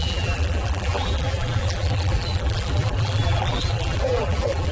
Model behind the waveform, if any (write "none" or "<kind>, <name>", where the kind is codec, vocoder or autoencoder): vocoder, BigVGAN v2